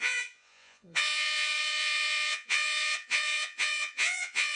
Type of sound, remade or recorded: remade